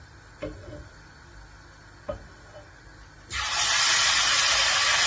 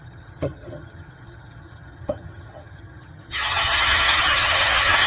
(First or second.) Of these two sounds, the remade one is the second